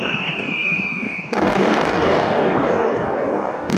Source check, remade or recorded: remade